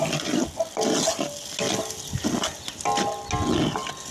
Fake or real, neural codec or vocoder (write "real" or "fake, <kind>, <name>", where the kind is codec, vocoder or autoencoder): real